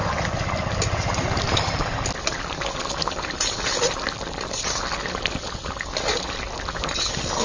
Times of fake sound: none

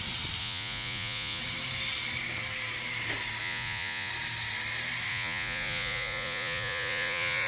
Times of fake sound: 0.4-1.4 (vocoder, Vocos); 3.4-4.1; 5.1-7.5

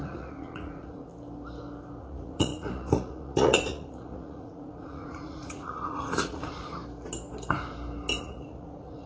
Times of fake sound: 0.0-1.1 (vocoder, Vocos); 2.0-6.8; 8.2-9.1

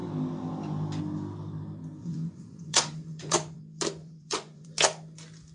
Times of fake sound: 2.0-3.6 (vocoder, Vocos); 4.0-4.7

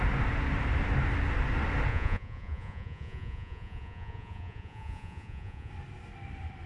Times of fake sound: 1.9-5.7 (vocoder, Vocos)